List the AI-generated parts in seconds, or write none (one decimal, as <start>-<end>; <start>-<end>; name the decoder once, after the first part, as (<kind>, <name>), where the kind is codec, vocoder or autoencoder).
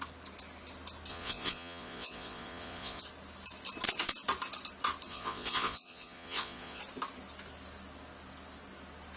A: 1.1-3.0 (vocoder, Vocos); 5.1-6.8